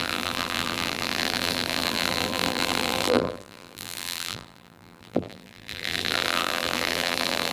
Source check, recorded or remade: remade